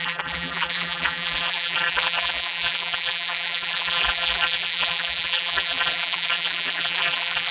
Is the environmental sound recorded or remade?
remade